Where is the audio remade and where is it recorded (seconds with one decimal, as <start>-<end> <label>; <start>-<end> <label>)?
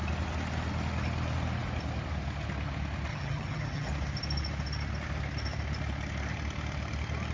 0.0-3.1 recorded; 3.1-3.9 remade; 3.9-7.3 recorded